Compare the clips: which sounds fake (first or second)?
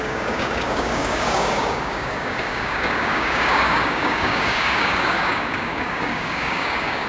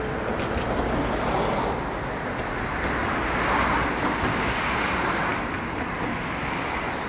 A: first